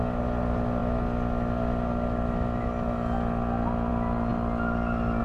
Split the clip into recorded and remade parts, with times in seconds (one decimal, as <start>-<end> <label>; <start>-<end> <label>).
0.0-5.2 recorded